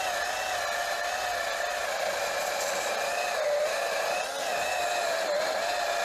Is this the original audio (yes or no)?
yes